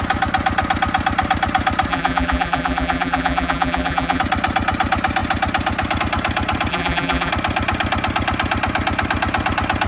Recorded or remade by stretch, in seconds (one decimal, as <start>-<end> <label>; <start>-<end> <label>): 0.0-1.9 recorded; 1.9-4.2 remade; 4.2-6.7 recorded; 6.7-7.3 remade; 7.3-9.9 recorded